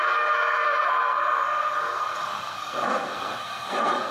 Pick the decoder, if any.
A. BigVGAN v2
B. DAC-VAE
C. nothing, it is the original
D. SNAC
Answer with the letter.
D